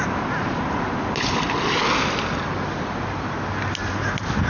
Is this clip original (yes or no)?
yes